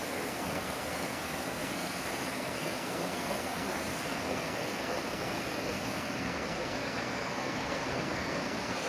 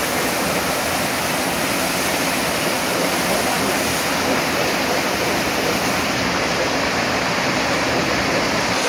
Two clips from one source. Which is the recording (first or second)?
second